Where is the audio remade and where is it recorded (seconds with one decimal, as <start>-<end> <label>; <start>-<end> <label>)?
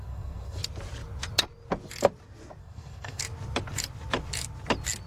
0.0-0.6 remade; 0.6-2.6 recorded; 2.6-3.2 remade; 3.2-5.1 recorded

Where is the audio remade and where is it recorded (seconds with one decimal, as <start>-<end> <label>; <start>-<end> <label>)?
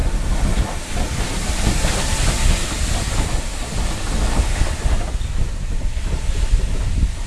0.0-7.3 recorded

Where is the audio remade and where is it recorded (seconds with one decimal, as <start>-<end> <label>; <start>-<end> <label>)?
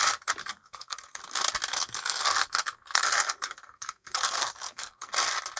0.0-0.4 recorded; 0.4-1.2 remade; 1.2-1.7 recorded; 1.7-5.1 remade; 5.1-5.6 recorded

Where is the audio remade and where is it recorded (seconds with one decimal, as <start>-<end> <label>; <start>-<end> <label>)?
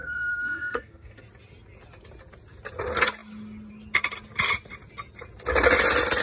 0.0-1.2 remade; 1.2-6.2 recorded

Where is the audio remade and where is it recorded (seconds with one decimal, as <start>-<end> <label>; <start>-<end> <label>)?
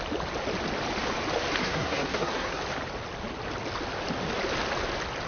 0.0-1.6 recorded; 1.6-2.6 remade; 2.6-5.3 recorded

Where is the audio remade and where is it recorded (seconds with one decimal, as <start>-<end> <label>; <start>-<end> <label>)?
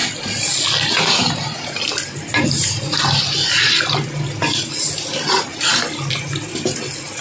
0.0-7.2 recorded